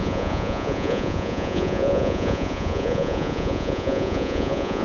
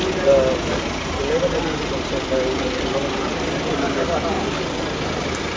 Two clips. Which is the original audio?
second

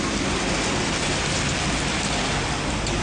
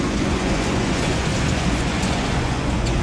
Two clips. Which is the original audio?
first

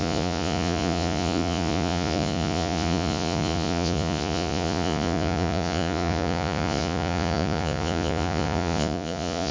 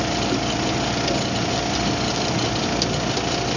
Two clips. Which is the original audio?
second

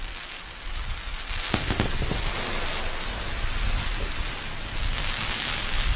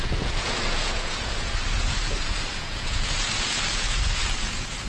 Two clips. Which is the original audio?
first